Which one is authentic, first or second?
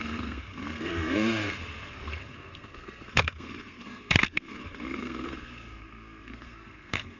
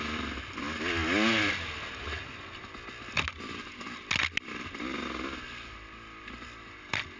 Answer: second